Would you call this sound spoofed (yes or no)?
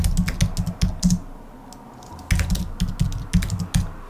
no